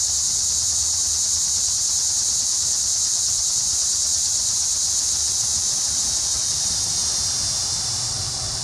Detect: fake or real fake